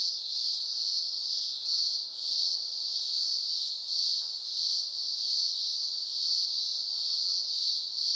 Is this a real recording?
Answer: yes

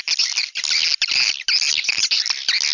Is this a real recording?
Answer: yes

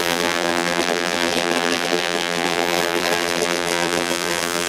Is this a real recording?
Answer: no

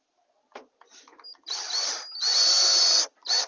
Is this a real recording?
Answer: yes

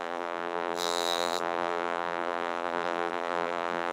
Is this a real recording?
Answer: no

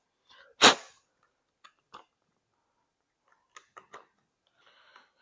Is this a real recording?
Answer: yes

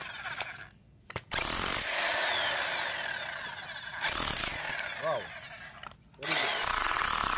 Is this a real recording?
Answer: yes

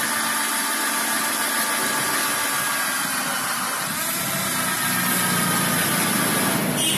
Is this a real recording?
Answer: yes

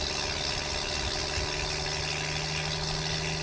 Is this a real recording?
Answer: yes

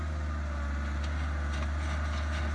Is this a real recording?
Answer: yes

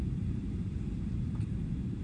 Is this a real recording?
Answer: no